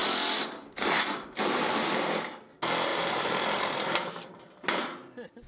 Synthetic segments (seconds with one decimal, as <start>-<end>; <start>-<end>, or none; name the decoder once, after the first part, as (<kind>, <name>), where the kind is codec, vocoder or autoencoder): 2.9-4.8 (vocoder, BigVGAN v2)